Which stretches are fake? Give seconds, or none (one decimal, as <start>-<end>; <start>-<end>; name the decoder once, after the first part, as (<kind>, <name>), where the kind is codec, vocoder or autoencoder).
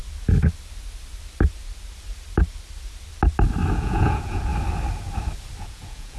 3.7-4.5 (vocoder, Vocos); 5.6-6.2